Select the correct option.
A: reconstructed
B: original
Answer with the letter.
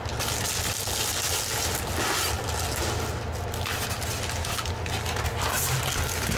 B